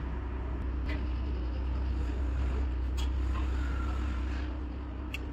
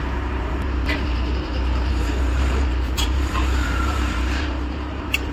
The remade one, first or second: second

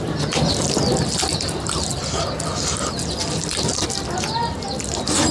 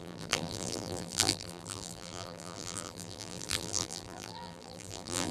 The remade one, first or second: second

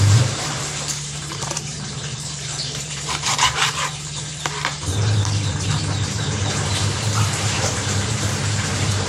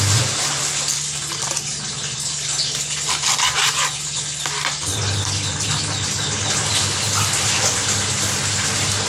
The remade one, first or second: first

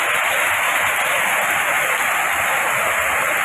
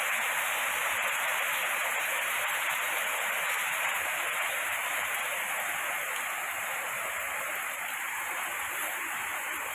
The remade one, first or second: second